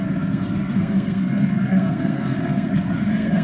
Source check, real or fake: fake